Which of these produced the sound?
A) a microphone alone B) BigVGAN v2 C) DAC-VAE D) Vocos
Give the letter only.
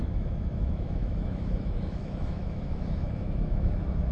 C